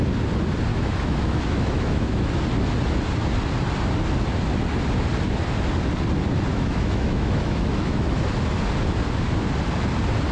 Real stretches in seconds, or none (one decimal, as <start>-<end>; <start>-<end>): 0.0-0.7; 2.3-6.5; 8.2-10.3